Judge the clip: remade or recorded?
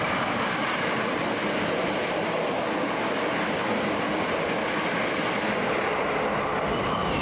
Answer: recorded